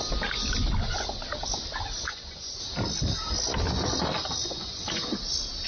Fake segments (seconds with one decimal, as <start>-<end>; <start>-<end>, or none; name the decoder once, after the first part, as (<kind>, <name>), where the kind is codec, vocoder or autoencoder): 2.1-2.6 (vocoder, Vocos); 4.4-5.1